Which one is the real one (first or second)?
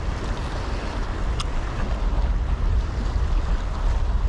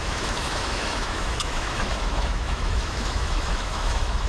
first